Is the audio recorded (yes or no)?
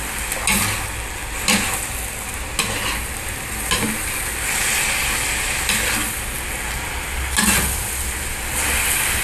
yes